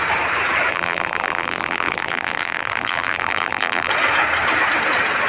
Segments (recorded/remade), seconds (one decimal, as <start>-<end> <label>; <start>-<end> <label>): 0.0-0.7 recorded; 0.7-3.9 remade; 3.9-5.3 recorded